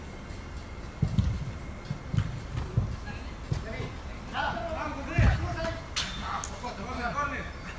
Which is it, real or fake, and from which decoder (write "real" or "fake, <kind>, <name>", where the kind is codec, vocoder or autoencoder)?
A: real